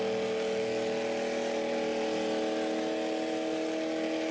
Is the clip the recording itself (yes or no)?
yes